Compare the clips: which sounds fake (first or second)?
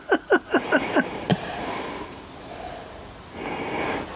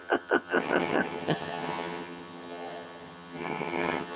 second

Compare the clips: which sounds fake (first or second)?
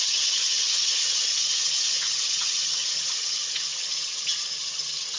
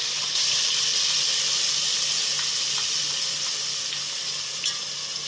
first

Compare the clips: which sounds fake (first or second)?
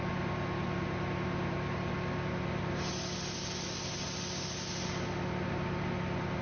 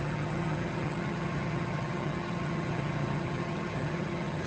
second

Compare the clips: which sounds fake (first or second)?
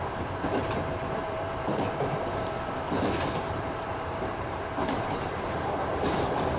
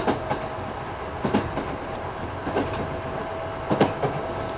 first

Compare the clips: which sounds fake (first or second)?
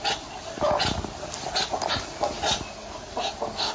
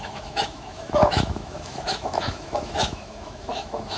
second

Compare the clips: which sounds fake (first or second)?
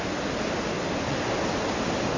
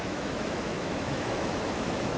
second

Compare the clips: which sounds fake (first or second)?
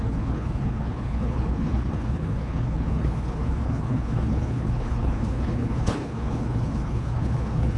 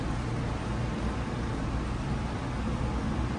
first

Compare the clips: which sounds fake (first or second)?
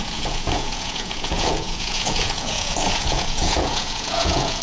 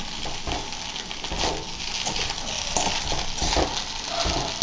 first